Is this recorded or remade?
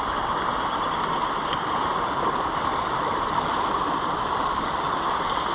recorded